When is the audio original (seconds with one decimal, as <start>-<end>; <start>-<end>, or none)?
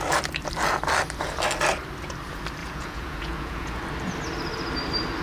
0.0-2.6; 3.8-5.2